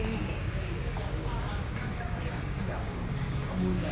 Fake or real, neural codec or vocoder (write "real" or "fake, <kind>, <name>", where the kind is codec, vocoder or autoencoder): fake, codec, DAC